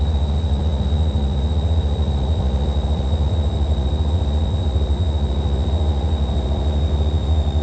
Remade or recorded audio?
remade